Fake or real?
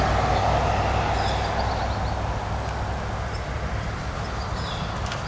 real